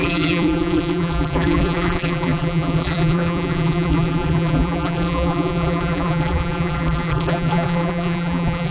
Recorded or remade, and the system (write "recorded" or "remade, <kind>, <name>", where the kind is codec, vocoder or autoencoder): remade, vocoder, BigVGAN v2